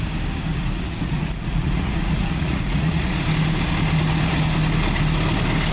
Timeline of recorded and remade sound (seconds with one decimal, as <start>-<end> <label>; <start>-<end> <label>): 0.0-0.5 recorded; 0.5-3.2 remade; 3.2-5.7 recorded

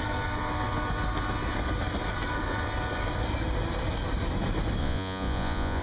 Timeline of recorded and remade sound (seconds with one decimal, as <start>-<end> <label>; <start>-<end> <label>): 0.0-4.8 recorded; 4.8-5.8 remade

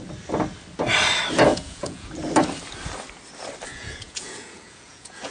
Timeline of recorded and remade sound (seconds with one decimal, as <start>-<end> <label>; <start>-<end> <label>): 0.0-1.5 recorded; 1.5-2.1 remade; 2.1-3.7 recorded; 3.7-5.3 remade

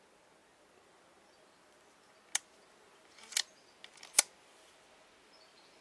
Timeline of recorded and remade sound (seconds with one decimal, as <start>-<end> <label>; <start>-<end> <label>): 0.0-5.8 recorded

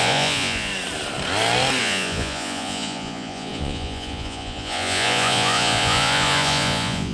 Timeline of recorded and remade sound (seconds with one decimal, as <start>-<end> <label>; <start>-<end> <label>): 0.0-0.7 remade; 0.7-1.8 recorded; 1.8-7.1 remade